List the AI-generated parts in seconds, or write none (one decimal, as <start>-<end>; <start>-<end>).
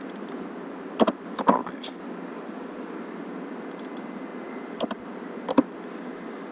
none